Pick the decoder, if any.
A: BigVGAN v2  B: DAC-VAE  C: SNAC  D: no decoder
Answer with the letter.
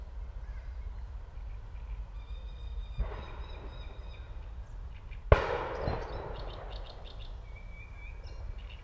D